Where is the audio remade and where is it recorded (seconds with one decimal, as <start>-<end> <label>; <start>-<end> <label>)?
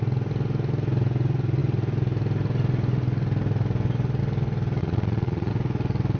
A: 0.0-4.8 recorded; 4.8-5.5 remade; 5.5-6.2 recorded